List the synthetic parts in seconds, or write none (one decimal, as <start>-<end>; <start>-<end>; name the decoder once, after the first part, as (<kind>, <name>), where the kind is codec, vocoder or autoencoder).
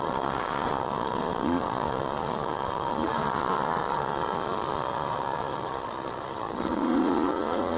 0.0-7.8 (vocoder, Vocos)